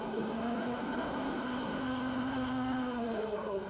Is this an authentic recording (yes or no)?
no